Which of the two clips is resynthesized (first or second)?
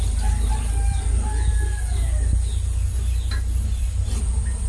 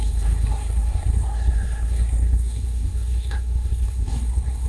second